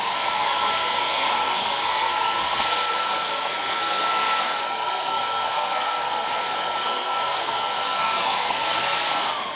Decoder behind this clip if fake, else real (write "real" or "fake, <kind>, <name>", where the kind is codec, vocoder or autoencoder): fake, codec, SNAC